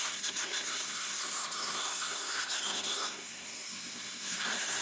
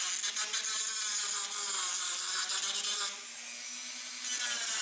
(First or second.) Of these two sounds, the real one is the second